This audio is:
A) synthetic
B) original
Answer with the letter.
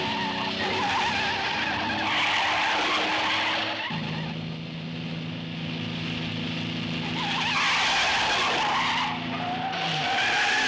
B